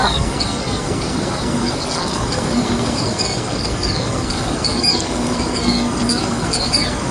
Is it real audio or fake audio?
fake